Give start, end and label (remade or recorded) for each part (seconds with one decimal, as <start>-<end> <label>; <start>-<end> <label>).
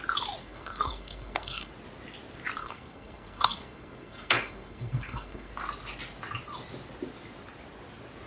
0.0-0.4 recorded; 0.4-1.7 remade; 1.7-2.6 recorded; 2.6-5.5 remade; 5.5-8.3 recorded